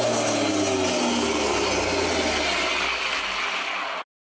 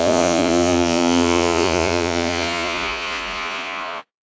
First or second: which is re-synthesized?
second